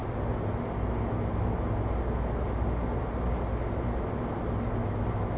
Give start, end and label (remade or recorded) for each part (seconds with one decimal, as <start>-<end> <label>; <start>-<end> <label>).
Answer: 0.0-5.4 recorded